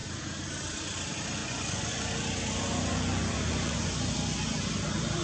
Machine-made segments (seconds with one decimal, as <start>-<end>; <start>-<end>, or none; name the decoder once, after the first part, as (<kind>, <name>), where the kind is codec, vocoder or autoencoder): 1.4-2.1 (vocoder, Vocos); 2.7-4.1